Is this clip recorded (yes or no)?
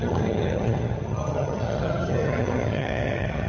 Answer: no